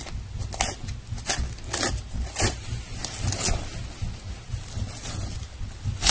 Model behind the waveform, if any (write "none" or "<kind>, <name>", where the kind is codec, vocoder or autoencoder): none